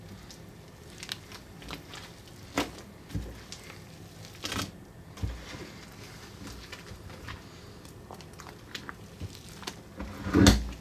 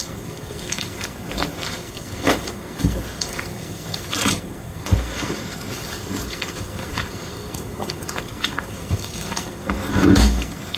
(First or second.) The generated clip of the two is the second